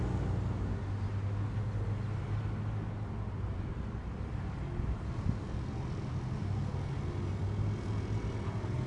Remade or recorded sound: recorded